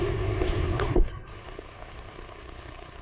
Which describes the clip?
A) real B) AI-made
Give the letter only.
B